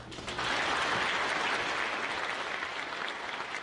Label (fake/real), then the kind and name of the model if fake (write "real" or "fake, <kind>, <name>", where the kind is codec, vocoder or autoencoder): real